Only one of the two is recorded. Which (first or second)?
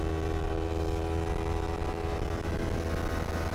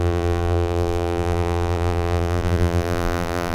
first